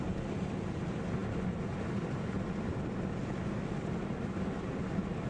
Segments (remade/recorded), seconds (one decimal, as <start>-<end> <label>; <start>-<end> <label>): 0.0-5.3 recorded